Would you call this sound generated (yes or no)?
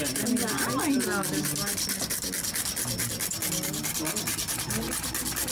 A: no